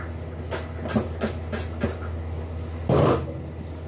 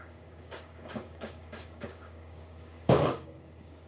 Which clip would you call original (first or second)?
first